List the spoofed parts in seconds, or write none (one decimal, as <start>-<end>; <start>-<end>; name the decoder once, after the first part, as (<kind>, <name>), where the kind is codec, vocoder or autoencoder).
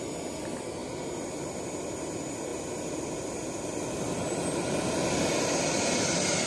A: none